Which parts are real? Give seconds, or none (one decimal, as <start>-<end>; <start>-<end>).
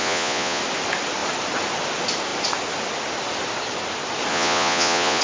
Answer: 0.6-4.3